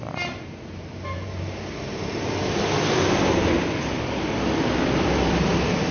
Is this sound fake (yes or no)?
no